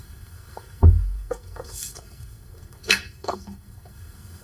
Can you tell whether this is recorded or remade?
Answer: remade